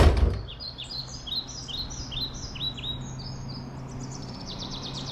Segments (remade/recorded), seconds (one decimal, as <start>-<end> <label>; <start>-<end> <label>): 0.0-1.0 remade; 1.0-4.1 recorded; 4.1-5.1 remade